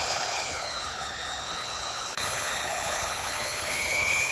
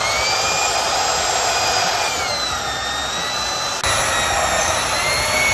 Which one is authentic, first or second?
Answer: second